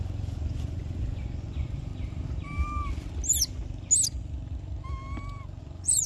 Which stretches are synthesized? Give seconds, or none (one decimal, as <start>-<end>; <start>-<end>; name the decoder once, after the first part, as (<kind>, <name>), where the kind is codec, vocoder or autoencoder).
0.0-1.9 (vocoder, Vocos); 5.6-6.1